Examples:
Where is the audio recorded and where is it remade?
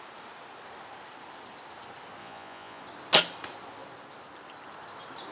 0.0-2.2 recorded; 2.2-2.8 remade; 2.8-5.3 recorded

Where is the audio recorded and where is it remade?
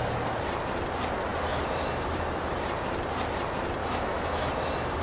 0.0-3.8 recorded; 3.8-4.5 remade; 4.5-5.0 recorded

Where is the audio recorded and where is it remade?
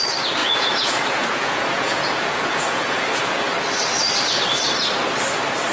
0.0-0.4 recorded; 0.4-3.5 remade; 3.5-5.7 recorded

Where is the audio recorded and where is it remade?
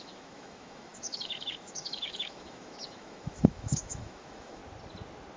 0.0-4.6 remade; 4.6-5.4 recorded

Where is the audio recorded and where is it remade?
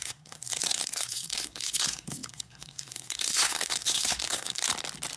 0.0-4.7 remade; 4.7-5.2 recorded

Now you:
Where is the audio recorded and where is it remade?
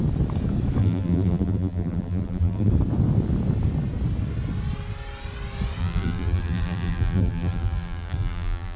0.0-0.8 recorded; 0.8-2.7 remade; 2.7-5.8 recorded; 5.8-8.8 remade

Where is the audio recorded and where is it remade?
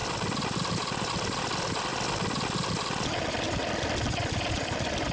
0.0-5.1 recorded